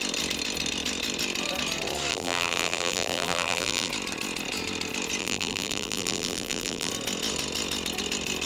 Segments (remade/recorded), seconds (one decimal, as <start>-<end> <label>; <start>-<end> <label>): 0.0-2.1 recorded; 2.1-3.9 remade; 3.9-5.2 recorded; 5.2-6.9 remade; 6.9-8.5 recorded